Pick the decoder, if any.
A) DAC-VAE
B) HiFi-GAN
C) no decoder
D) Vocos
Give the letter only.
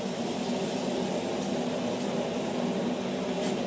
C